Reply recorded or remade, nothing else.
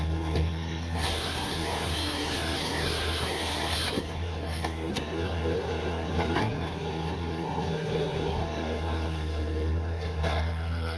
remade